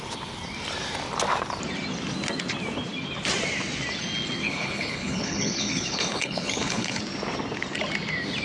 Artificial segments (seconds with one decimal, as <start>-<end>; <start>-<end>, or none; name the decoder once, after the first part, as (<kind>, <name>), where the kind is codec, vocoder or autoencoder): 4.4-7.0 (codec, HILCodec)